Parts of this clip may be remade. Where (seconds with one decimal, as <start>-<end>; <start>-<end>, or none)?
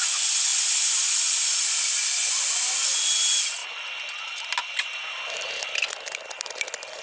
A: none